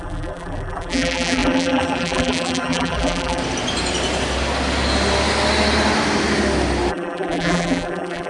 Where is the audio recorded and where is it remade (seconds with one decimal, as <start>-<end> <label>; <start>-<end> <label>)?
0.0-3.4 remade; 3.4-6.9 recorded; 6.9-8.3 remade